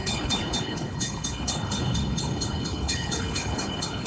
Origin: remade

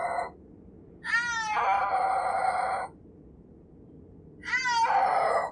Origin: recorded